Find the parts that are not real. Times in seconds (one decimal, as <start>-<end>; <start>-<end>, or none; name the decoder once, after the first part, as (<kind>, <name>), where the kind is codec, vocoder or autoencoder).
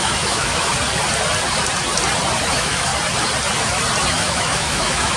0.0-0.7 (autoencoder, DAC-VAE); 2.4-2.9; 4.1-5.2